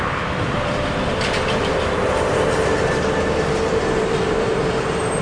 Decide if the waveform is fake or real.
fake